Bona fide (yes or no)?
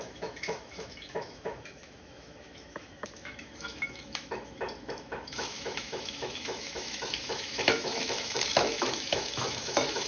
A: no